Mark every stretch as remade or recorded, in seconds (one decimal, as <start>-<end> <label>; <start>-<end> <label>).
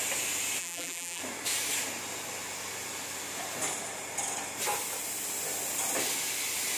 0.0-0.6 recorded; 0.6-1.2 remade; 1.2-6.8 recorded